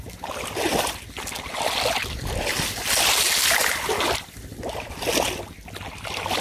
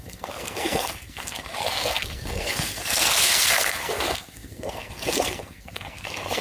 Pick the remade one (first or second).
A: second